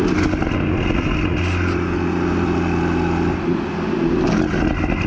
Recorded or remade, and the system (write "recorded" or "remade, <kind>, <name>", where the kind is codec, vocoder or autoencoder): recorded